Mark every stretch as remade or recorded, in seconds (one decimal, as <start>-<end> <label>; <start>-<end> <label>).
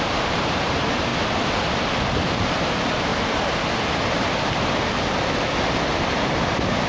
0.0-1.1 remade; 1.1-2.2 recorded; 2.2-3.1 remade; 3.1-6.1 recorded; 6.1-6.9 remade